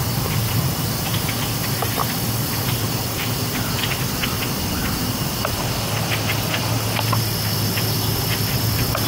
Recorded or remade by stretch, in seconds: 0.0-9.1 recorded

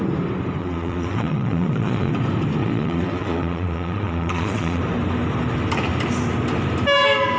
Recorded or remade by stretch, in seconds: 0.0-0.6 recorded; 0.6-2.1 remade; 2.1-2.6 recorded; 2.6-4.8 remade; 4.8-7.4 recorded

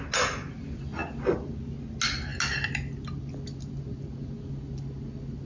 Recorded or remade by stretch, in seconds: 0.0-5.5 recorded

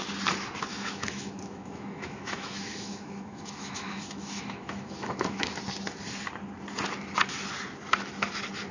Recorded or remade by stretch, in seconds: 0.0-0.7 recorded; 0.7-5.6 remade; 5.6-8.7 recorded

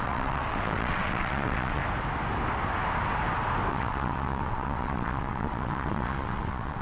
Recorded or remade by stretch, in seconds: 0.0-1.8 remade; 1.8-3.7 recorded; 3.7-6.8 remade